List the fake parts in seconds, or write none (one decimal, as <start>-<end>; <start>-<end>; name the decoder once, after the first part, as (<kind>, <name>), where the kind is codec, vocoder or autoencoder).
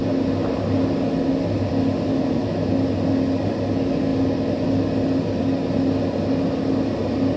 2.1-2.7 (autoencoder, DAC-VAE)